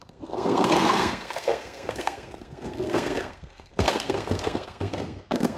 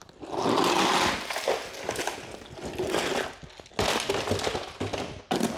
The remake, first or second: first